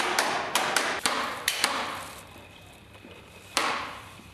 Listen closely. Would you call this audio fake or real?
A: fake